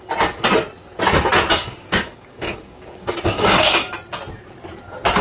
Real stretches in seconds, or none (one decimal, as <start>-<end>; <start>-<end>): 0.0-1.6; 3.9-5.2